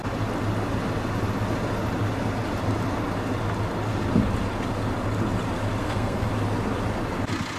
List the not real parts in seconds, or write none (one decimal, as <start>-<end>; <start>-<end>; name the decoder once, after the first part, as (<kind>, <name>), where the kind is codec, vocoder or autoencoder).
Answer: 5.8-6.3 (codec, SNAC)